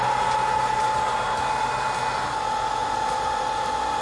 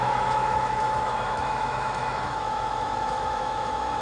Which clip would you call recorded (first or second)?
first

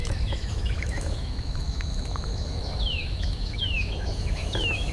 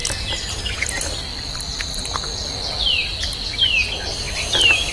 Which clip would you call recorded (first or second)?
second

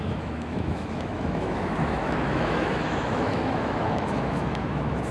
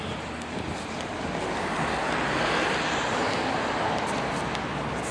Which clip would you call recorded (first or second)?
second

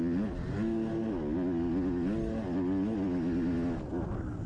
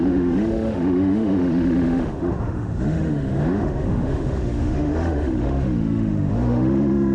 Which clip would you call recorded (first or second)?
first